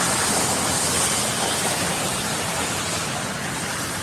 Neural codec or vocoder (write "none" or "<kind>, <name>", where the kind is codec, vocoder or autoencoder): none